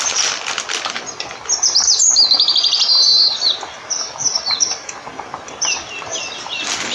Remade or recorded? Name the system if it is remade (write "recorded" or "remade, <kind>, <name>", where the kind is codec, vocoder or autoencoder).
remade, vocoder, BigVGAN v2